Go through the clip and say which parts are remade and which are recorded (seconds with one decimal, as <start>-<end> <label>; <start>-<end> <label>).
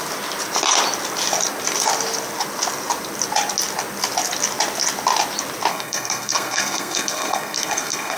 0.0-5.7 recorded; 5.7-8.2 remade